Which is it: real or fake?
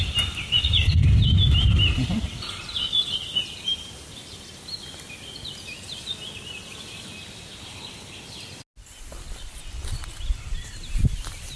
real